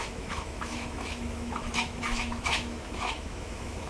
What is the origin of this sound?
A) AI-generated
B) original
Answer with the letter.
A